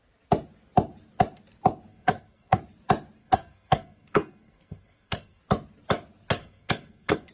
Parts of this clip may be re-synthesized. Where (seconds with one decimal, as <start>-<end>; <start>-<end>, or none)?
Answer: 1.9-2.6; 3.2-5.4; 6.4-7.3